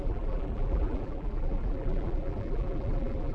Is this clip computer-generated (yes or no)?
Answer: yes